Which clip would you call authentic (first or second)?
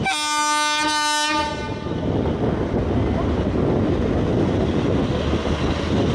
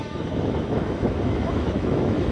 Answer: first